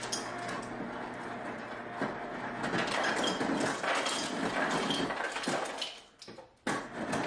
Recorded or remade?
recorded